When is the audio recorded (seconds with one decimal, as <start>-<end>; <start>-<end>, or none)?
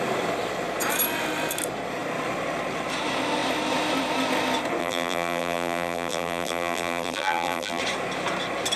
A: 0.0-4.8; 7.8-8.8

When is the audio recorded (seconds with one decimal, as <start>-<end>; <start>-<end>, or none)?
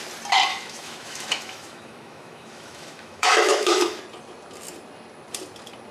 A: 0.0-0.5; 4.0-5.9